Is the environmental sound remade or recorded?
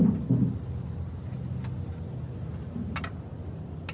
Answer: recorded